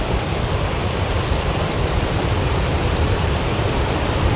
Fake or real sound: fake